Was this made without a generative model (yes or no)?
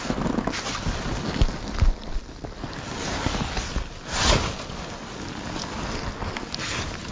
yes